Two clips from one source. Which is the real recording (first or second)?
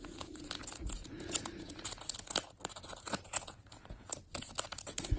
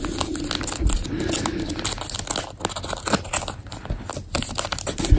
second